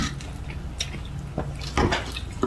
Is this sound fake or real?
real